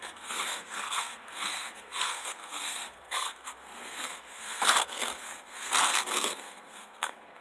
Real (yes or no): no